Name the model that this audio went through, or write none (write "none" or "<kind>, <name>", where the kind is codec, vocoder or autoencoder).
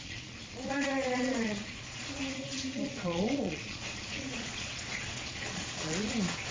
vocoder, Vocos